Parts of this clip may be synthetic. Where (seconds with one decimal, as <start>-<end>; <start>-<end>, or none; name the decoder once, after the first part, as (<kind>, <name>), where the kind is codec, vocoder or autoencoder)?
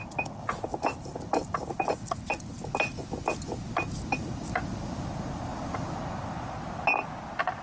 none